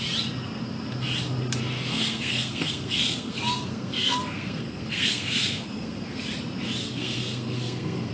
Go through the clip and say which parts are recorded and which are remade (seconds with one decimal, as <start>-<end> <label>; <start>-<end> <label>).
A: 0.0-1.9 recorded; 1.9-6.2 remade; 6.2-6.8 recorded; 6.8-8.1 remade

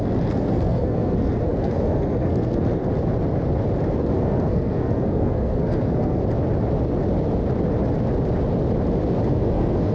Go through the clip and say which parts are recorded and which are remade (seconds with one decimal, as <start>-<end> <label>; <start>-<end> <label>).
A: 0.0-2.8 remade; 2.8-3.9 recorded; 3.9-6.2 remade; 6.2-9.3 recorded; 9.3-9.9 remade

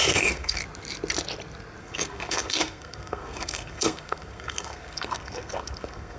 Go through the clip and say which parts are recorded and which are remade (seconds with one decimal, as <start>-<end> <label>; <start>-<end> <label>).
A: 0.0-0.6 remade; 0.6-1.8 recorded; 1.8-6.2 remade

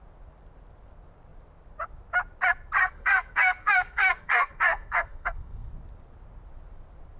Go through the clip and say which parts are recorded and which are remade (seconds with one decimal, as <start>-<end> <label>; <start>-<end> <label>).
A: 0.0-2.8 recorded; 2.8-5.7 remade; 5.7-7.2 recorded